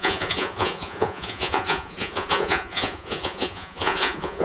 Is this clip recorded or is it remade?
remade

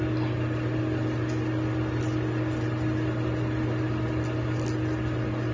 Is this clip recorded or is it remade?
recorded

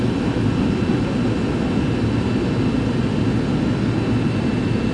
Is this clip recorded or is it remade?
recorded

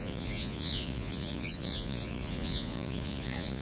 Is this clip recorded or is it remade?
remade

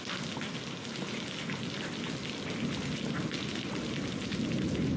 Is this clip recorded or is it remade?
recorded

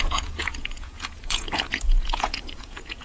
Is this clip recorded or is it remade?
remade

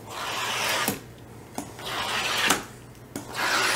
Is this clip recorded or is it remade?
recorded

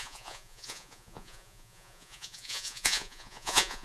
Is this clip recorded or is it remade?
remade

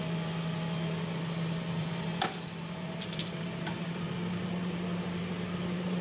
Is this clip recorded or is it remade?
recorded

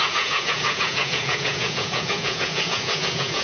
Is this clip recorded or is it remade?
remade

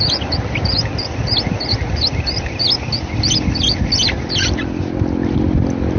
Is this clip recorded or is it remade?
recorded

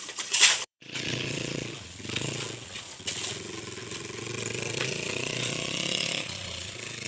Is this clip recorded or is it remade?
remade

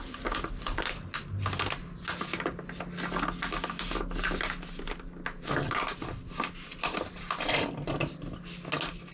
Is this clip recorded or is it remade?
recorded